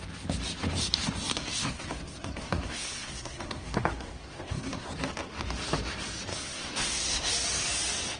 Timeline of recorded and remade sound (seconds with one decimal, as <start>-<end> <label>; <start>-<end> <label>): 0.0-1.3 recorded; 1.3-4.9 remade; 4.9-6.3 recorded; 6.3-7.3 remade; 7.3-8.2 recorded